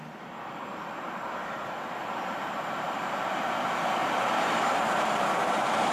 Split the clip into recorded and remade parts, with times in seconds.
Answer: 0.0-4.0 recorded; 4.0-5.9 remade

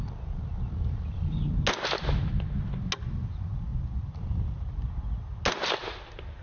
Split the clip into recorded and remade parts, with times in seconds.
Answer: 0.0-3.7 recorded; 3.7-4.8 remade; 4.8-6.4 recorded

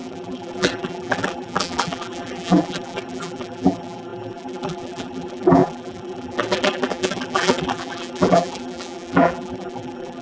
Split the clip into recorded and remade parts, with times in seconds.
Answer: 0.0-10.2 remade

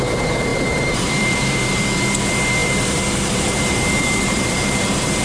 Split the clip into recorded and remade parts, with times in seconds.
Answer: 0.0-0.5 recorded; 0.5-1.8 remade; 1.8-2.6 recorded; 2.6-5.2 remade

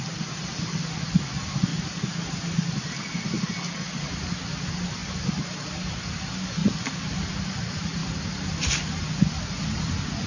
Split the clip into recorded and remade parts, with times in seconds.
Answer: 0.0-1.7 recorded; 1.7-3.4 remade; 3.4-6.6 recorded; 6.6-7.3 remade; 7.3-8.0 recorded; 8.0-9.9 remade; 9.9-10.3 recorded

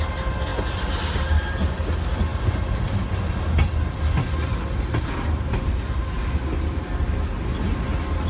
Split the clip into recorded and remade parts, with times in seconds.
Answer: 0.0-8.3 recorded

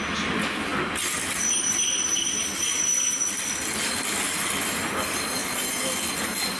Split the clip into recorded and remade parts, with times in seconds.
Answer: 0.0-0.7 recorded; 0.7-4.7 remade; 4.7-6.6 recorded

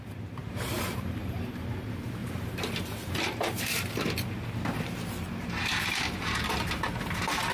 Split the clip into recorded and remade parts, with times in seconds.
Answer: 0.0-0.4 recorded; 0.4-1.3 remade; 1.3-2.2 recorded; 2.2-6.7 remade; 6.7-7.5 recorded